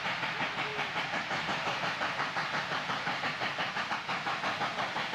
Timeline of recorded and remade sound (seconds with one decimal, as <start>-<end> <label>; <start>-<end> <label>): 0.0-0.7 recorded; 0.7-3.8 remade; 3.8-5.1 recorded